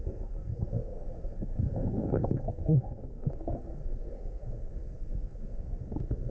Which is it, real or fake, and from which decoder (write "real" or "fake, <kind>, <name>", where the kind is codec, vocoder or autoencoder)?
fake, codec, SNAC